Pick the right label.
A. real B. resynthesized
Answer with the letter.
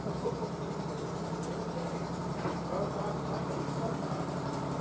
B